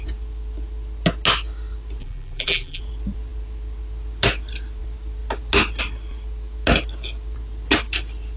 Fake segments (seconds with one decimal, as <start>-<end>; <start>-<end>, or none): 2.0-2.8